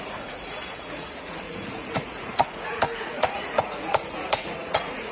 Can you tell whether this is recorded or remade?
remade